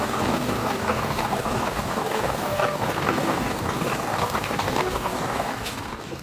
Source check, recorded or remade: remade